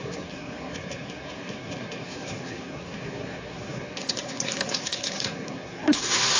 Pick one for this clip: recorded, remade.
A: remade